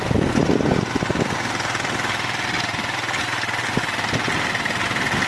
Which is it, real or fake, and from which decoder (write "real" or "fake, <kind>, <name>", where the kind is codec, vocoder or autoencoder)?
real